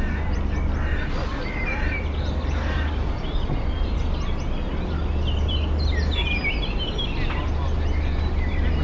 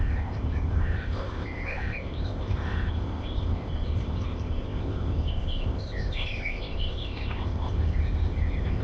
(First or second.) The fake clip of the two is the second